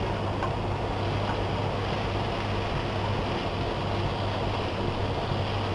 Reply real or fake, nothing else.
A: real